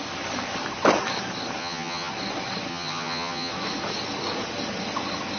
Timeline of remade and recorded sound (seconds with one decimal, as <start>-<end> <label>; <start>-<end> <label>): 0.0-1.6 recorded; 1.6-2.1 remade; 2.1-2.7 recorded; 2.7-3.5 remade; 3.5-5.4 recorded